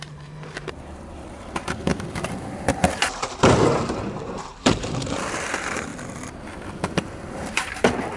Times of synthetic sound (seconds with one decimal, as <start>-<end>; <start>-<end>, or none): 0.0-5.9; 6.9-8.2